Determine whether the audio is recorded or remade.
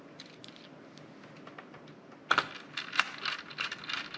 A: recorded